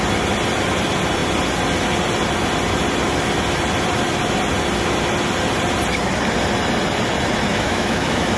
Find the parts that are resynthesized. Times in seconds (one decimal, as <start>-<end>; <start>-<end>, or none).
7.5-8.4